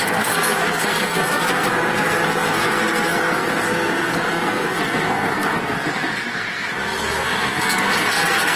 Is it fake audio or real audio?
fake